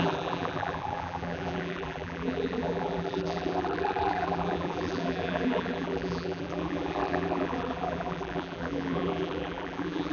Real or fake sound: fake